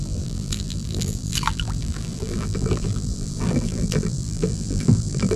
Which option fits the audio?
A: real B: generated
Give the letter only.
B